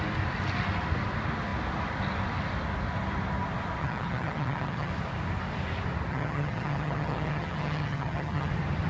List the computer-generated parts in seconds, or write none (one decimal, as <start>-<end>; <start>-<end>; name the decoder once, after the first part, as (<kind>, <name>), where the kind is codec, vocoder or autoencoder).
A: 3.8-4.9 (vocoder, HiFi-GAN); 6.1-8.5